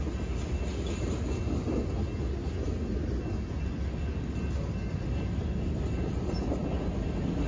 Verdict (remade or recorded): recorded